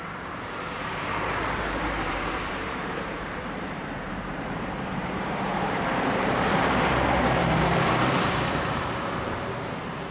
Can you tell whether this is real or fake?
fake